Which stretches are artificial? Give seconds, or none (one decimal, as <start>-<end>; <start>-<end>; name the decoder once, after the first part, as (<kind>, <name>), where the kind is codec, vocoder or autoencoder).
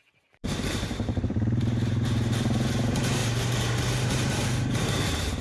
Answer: 0.0-3.2 (vocoder, BigVGAN v2); 4.0-5.4